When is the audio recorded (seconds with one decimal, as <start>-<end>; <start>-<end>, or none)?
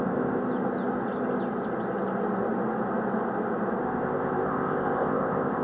0.4-3.8